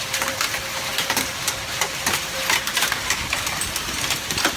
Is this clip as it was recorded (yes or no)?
no